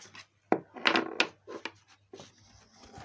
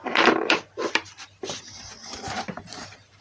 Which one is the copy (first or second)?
second